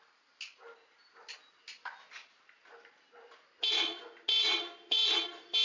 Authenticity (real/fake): real